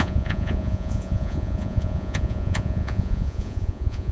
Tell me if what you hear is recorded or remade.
remade